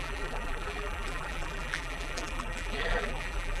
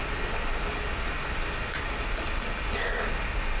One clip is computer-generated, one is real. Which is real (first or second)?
second